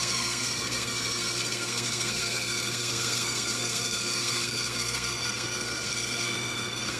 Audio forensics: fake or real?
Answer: fake